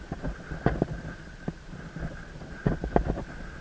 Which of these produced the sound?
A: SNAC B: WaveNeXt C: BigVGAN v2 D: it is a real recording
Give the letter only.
D